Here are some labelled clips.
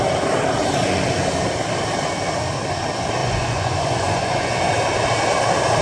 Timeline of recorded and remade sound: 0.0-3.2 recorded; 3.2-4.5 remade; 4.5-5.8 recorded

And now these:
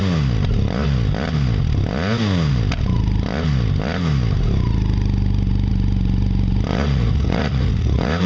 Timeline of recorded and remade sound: 0.0-6.7 recorded; 6.7-8.3 remade

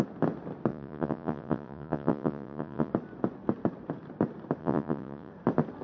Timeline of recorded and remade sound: 0.0-0.7 recorded; 0.7-2.9 remade; 2.9-4.6 recorded; 4.6-5.3 remade; 5.3-5.8 recorded

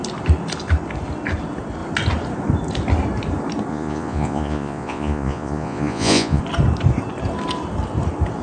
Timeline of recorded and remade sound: 0.0-3.7 recorded; 3.7-6.4 remade; 6.4-8.4 recorded

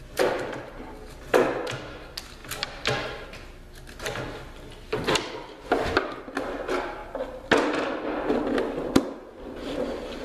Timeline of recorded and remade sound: 0.0-10.2 recorded

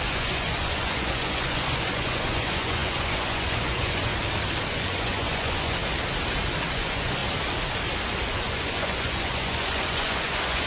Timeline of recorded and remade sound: 0.0-4.1 remade; 4.1-4.7 recorded; 4.7-5.8 remade; 5.8-6.7 recorded; 6.7-7.2 remade; 7.2-8.2 recorded; 8.2-10.7 remade

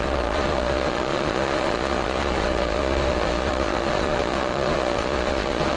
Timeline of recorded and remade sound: 0.0-5.8 remade

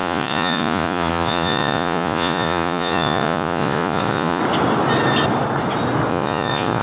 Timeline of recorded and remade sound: 0.0-4.4 remade; 4.4-6.1 recorded; 6.1-6.8 remade